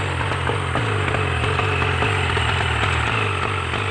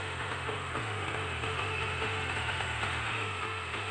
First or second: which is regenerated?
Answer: second